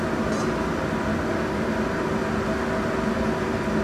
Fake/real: real